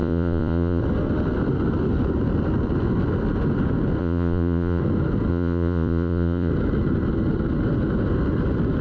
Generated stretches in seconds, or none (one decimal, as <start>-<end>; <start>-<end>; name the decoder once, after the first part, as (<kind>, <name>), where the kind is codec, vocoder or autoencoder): 0.0-0.8 (vocoder, Vocos); 4.0-4.8; 5.3-6.5